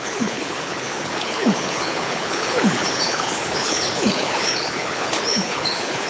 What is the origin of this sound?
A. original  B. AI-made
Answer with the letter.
B